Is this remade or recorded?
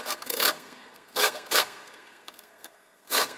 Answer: remade